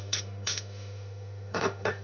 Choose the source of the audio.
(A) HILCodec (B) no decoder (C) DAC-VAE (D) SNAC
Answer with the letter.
C